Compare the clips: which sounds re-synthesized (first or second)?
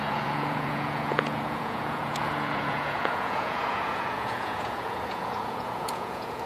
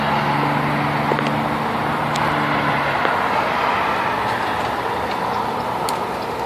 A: first